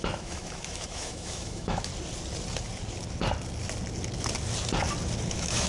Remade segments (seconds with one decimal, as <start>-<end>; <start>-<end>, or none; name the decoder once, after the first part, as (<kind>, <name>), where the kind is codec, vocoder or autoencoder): 0.0-1.9 (autoencoder, DAC-VAE); 5.3-5.7